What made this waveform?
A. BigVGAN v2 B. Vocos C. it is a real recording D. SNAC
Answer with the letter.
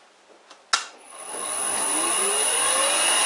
C